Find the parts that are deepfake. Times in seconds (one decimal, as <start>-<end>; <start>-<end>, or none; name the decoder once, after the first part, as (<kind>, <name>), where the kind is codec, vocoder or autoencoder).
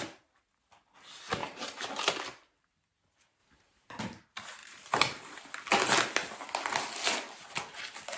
1.4-2.1 (vocoder, BigVGAN v2); 3.4-4.0; 4.6-5.4